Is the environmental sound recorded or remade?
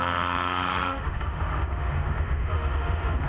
remade